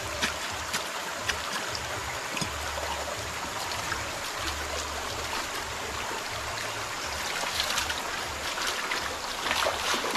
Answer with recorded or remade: recorded